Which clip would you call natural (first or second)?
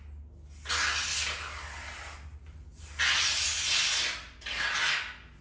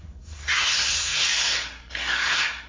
first